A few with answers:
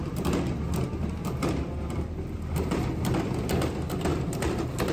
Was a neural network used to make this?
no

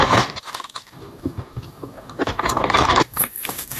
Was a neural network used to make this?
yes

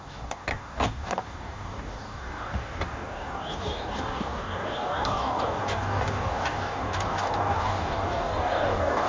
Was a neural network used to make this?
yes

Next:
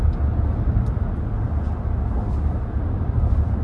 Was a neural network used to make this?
no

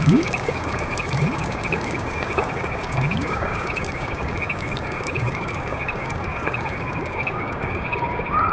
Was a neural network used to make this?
yes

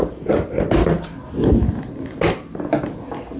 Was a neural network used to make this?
no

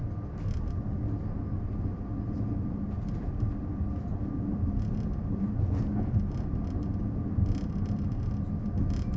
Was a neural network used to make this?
no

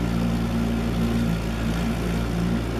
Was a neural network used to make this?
no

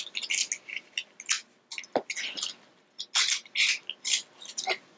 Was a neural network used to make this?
no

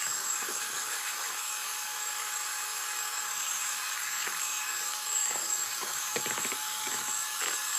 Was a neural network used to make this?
yes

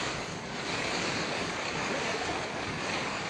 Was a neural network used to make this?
yes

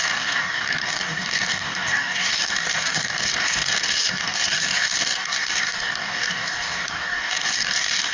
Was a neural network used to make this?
yes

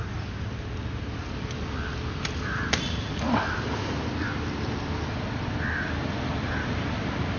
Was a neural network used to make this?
no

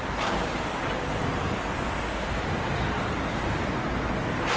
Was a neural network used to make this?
no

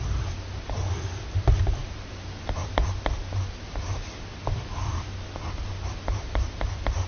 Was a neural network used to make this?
no